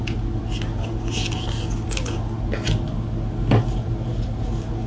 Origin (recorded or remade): recorded